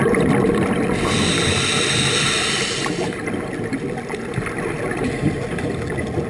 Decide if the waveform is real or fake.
real